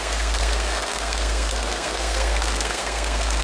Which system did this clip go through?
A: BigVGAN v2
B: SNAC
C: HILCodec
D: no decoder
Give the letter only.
B